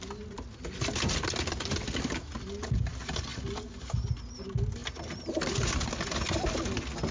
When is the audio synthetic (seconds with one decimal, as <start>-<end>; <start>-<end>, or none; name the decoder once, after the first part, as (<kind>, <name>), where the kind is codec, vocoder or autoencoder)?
none